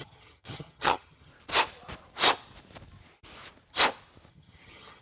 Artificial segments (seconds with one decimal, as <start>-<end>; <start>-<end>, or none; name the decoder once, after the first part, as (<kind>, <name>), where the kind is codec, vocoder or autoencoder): 0.0-1.3 (vocoder, HiFi-GAN); 4.3-5.0